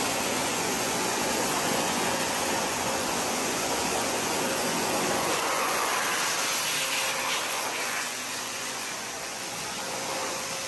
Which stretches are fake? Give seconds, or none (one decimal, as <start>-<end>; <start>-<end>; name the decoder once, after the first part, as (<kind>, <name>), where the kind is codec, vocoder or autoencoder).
0.0-5.9 (vocoder, Vocos); 7.5-10.7